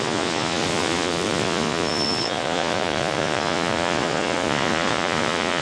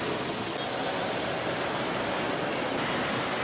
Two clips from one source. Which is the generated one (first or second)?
first